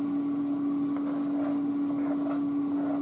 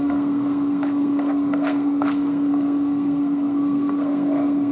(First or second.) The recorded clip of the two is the first